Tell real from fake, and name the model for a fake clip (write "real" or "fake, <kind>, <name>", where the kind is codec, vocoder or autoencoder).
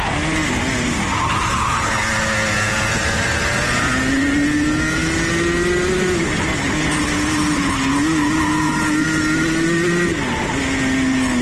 real